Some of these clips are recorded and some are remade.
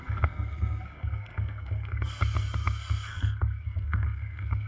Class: remade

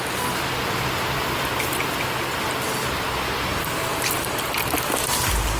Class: recorded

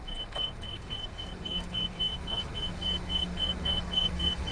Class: remade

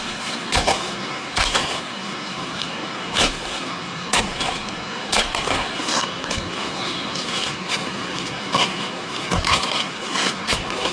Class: remade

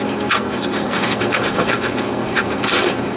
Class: remade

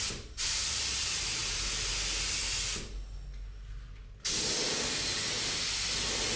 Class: recorded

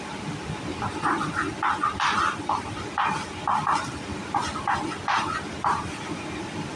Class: recorded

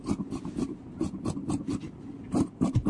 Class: recorded